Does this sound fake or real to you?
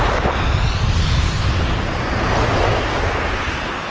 real